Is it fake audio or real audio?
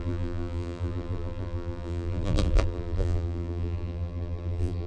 fake